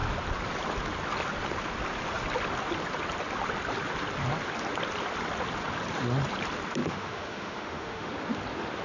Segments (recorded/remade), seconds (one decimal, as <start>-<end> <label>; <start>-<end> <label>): 0.0-6.8 recorded; 6.8-8.1 remade; 8.1-8.8 recorded